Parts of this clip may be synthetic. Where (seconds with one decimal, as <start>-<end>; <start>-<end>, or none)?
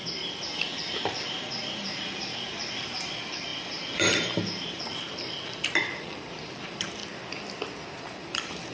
0.0-7.0; 8.0-8.7